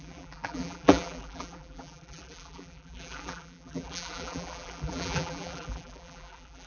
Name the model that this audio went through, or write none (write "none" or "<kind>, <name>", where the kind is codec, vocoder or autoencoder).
vocoder, BigVGAN v2